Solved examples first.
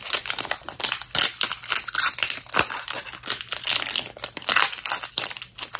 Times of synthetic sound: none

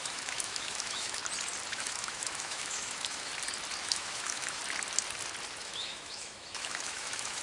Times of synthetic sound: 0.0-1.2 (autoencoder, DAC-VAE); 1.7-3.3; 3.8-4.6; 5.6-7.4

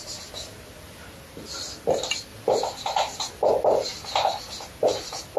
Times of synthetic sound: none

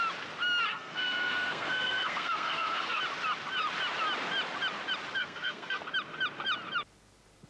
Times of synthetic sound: 0.7-3.0 (codec, SNAC); 5.2-5.8